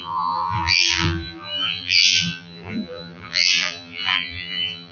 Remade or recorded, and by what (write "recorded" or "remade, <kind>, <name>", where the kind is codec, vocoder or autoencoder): remade, vocoder, BigVGAN v2